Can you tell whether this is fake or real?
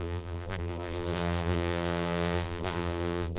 fake